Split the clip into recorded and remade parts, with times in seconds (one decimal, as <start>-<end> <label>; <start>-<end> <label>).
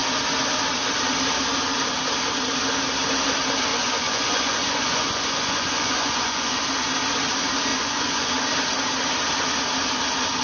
0.0-3.7 recorded; 3.7-6.6 remade; 6.6-7.7 recorded; 7.7-8.3 remade; 8.3-10.4 recorded